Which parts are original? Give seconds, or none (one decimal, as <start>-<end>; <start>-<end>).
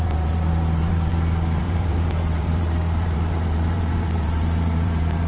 1.1-1.6